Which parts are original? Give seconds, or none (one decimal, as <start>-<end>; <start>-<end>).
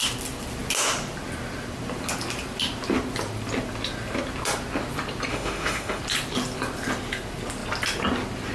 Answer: 0.0-5.3; 6.0-8.5